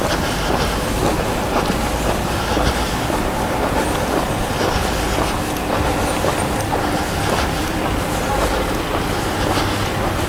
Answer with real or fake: real